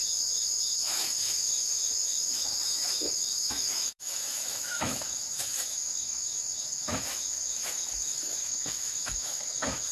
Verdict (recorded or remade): remade